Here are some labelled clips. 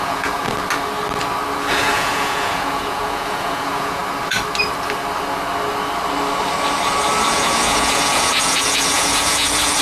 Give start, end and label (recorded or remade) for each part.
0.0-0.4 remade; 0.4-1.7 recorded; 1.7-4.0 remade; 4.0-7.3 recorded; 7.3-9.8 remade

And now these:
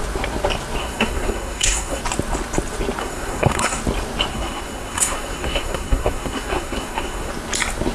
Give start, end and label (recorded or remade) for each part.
0.0-0.8 recorded; 0.8-2.0 remade; 2.0-3.0 recorded; 3.0-3.8 remade; 3.8-4.3 recorded; 4.3-7.3 remade; 7.3-7.9 recorded

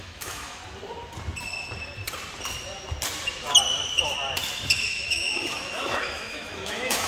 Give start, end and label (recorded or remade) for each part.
0.0-0.6 remade; 0.6-4.9 recorded; 4.9-7.1 remade

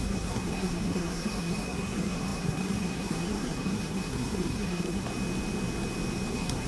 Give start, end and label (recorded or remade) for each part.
0.0-5.1 remade; 5.1-6.3 recorded; 6.3-6.7 remade

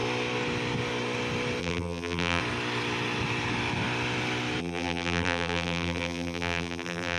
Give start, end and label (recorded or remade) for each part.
0.0-1.6 recorded; 1.6-2.4 remade; 2.4-4.6 recorded; 4.6-7.2 remade

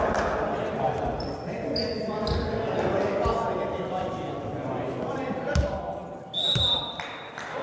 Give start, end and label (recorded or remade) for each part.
0.0-7.6 recorded

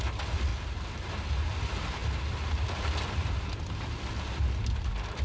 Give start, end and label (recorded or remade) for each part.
0.0-5.2 recorded

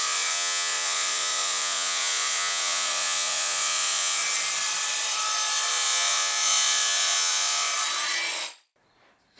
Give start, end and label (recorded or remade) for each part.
0.0-4.2 remade; 4.2-5.7 recorded; 5.7-7.7 remade; 7.7-9.4 recorded